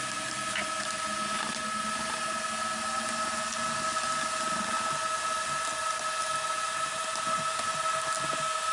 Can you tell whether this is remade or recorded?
recorded